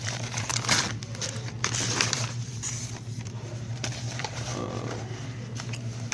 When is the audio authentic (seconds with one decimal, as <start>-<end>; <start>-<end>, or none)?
0.5-2.1; 4.5-5.6